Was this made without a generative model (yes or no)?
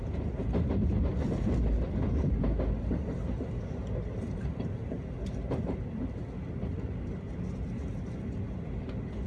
yes